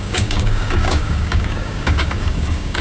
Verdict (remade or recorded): remade